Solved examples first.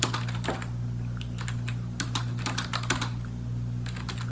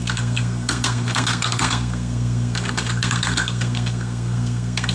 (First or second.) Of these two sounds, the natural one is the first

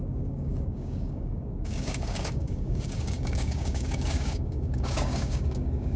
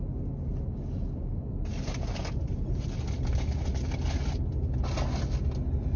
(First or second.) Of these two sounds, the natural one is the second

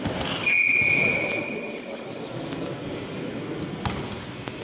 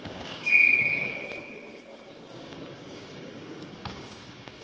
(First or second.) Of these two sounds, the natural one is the first